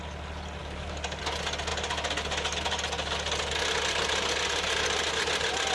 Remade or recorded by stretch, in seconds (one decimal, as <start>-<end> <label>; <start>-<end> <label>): 0.0-0.6 recorded; 0.6-1.2 remade; 1.2-5.7 recorded